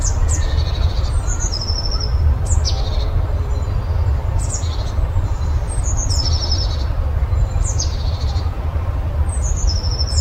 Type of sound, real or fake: real